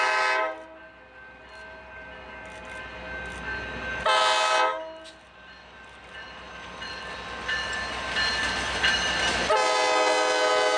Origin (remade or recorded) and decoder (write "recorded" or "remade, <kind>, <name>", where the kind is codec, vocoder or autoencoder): recorded